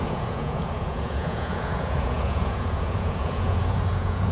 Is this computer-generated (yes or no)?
yes